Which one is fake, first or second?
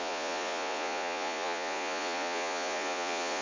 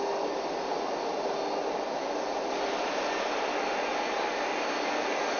first